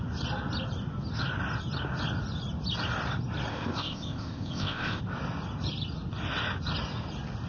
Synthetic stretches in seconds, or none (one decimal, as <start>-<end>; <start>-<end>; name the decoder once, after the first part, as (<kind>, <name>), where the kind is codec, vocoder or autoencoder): 3.5-5.0 (codec, ZipCodec)